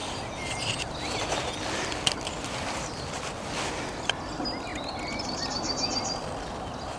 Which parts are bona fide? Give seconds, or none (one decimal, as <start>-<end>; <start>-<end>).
0.0-7.0